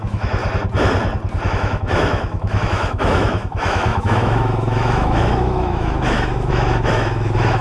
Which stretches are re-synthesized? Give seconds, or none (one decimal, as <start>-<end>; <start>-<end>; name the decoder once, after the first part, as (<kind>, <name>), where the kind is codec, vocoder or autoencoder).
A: 0.0-0.4 (autoencoder, DAC-VAE); 1.5-7.6